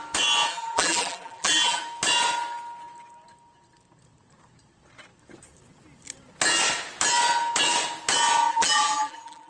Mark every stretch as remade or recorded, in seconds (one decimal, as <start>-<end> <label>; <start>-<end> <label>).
0.0-0.5 recorded; 0.5-1.8 remade; 1.8-8.5 recorded; 8.5-9.5 remade